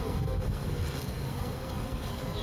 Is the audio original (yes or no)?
no